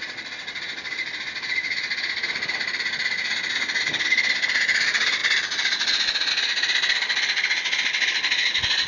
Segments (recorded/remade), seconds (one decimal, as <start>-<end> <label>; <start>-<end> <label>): 0.0-8.9 recorded